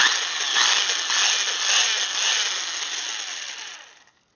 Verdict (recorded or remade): recorded